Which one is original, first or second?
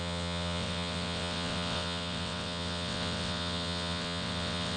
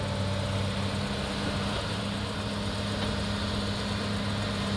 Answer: second